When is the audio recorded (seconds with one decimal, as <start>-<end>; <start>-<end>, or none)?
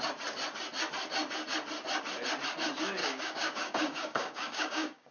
0.0-3.0